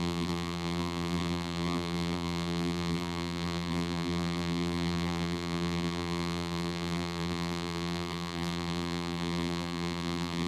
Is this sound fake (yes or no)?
yes